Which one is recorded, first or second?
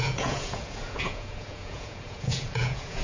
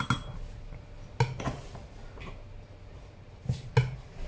second